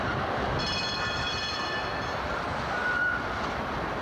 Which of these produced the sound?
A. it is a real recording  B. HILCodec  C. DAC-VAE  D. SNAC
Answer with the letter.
A